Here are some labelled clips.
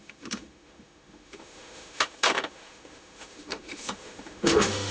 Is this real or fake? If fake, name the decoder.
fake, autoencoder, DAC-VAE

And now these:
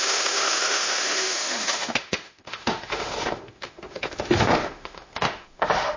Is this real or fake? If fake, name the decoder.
fake, autoencoder, DAC-VAE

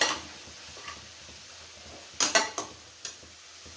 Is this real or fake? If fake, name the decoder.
real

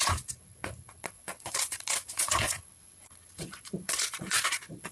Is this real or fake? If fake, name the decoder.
fake, vocoder, Vocos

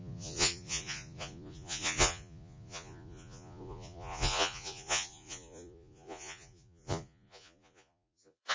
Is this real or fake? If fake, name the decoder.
fake, vocoder, Vocos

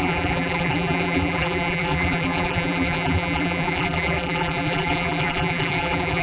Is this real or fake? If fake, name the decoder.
fake, vocoder, BigVGAN v2